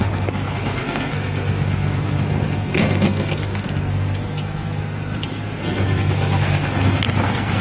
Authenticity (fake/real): fake